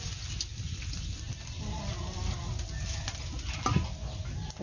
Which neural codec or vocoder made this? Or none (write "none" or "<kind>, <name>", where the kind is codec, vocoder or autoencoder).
none